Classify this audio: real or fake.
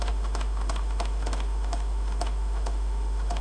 fake